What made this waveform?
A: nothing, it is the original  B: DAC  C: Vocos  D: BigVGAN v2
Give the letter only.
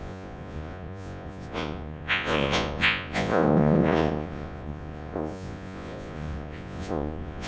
C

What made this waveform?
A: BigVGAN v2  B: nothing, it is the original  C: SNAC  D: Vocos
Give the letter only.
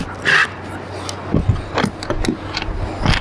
B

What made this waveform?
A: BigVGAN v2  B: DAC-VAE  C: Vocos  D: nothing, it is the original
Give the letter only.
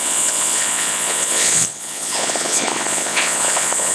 C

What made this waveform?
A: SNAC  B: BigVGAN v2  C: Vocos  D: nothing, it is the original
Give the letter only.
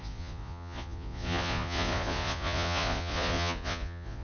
C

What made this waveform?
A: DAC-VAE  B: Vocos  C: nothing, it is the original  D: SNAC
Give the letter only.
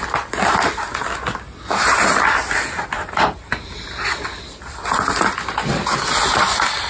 C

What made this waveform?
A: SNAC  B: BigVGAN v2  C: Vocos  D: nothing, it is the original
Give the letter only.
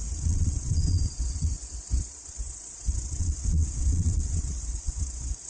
C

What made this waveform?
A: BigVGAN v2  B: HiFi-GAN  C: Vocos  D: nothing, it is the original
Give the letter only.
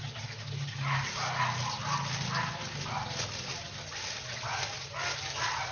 D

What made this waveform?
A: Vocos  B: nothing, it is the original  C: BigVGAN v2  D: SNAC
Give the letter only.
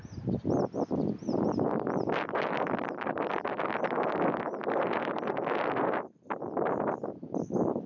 B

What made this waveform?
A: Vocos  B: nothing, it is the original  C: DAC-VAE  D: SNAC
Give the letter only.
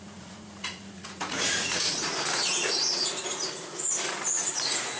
A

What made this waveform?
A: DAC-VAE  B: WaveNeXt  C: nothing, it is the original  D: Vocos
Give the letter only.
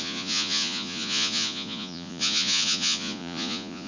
D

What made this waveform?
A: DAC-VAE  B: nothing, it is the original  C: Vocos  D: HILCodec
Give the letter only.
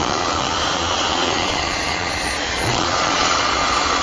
C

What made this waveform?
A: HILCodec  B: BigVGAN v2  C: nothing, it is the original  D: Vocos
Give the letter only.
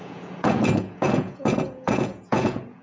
D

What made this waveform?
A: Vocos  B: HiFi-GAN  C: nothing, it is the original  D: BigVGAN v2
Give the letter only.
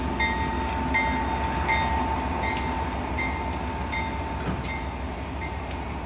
C